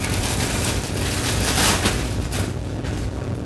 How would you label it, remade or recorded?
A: recorded